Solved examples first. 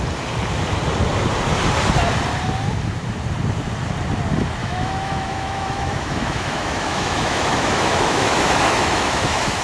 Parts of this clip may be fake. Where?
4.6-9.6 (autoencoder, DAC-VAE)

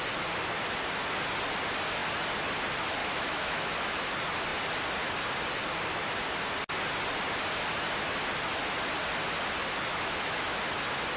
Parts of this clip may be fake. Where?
3.0-4.0 (autoencoder, DAC-VAE); 9.9-10.6

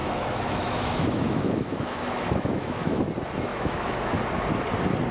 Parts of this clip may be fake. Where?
0.0-3.1 (autoencoder, DAC-VAE); 3.5-4.2